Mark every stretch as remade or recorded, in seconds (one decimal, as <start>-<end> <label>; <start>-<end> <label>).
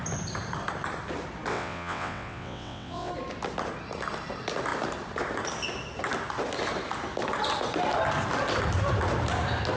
0.0-1.5 recorded; 1.5-3.1 remade; 3.1-9.8 recorded